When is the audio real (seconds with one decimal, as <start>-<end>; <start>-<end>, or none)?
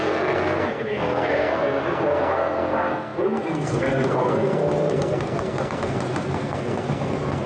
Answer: none